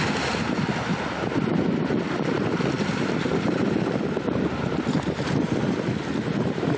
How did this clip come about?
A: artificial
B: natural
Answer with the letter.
B